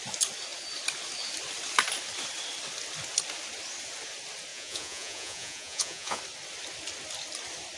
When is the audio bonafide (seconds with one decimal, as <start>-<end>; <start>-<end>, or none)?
0.0-4.5; 6.2-7.8